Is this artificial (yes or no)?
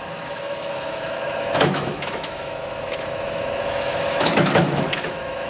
yes